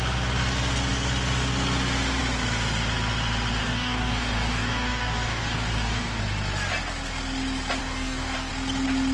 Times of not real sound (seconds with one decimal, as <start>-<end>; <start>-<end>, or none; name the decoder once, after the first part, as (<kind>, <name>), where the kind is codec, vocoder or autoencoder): 3.6-6.2 (codec, DAC); 7.8-8.5